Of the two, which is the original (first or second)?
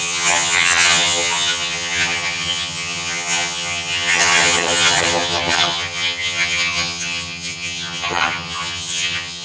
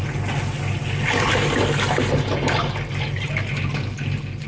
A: second